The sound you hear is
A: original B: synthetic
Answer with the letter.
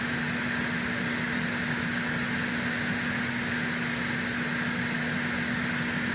A